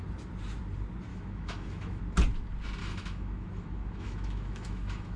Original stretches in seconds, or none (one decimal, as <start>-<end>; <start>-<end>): 0.0-1.1; 2.0-2.8